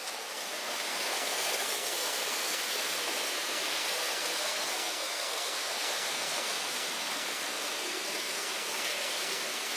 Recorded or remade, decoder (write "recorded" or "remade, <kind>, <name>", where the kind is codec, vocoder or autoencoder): remade, codec, SNAC